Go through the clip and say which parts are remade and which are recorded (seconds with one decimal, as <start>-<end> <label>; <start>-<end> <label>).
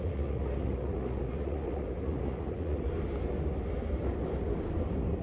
0.0-2.9 remade; 2.9-5.2 recorded